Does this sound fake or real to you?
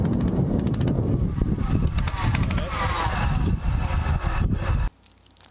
real